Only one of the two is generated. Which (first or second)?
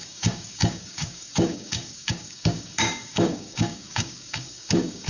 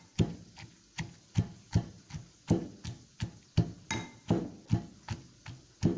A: first